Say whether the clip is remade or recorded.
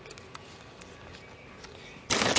recorded